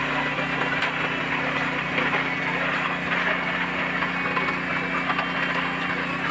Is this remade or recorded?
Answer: recorded